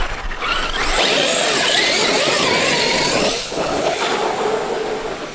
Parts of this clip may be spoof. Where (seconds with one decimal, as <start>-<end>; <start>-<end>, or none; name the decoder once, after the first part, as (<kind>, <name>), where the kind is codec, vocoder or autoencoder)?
3.4-4.0 (codec, HILCodec)